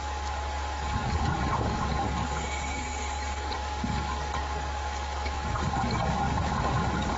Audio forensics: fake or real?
fake